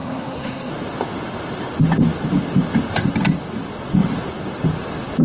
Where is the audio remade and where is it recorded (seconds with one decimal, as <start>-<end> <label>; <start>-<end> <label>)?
0.0-0.7 remade; 0.7-5.2 recorded